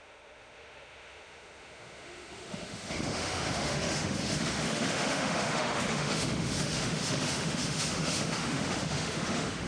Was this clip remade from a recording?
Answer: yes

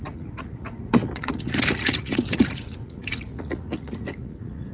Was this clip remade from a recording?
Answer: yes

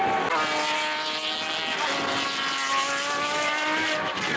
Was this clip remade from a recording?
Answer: no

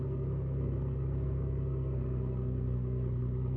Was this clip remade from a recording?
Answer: yes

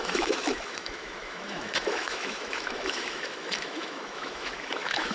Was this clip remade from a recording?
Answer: yes